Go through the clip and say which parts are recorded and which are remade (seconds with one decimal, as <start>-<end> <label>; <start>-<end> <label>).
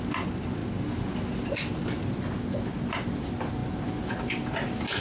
0.0-5.0 recorded